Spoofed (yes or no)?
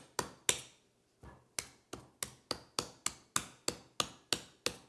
no